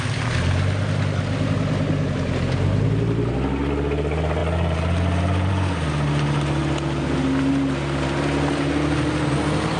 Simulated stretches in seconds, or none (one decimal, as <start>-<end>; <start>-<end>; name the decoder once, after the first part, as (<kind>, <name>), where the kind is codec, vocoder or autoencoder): none